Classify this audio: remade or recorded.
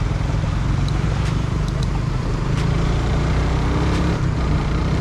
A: remade